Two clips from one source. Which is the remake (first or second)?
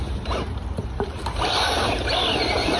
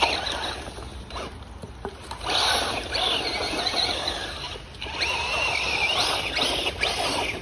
first